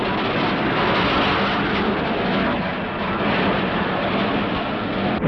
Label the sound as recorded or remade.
recorded